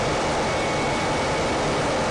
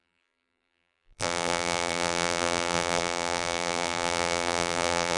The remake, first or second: second